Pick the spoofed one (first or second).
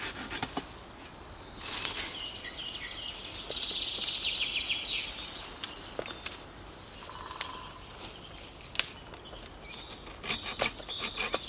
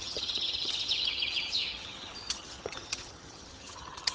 second